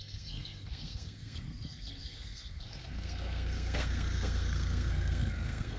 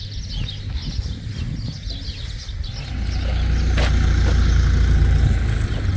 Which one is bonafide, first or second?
second